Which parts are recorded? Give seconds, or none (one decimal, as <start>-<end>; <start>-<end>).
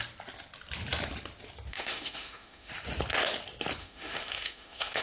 0.0-1.7; 2.7-3.8